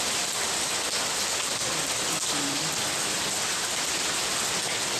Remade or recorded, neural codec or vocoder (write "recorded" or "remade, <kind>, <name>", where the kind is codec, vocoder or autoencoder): recorded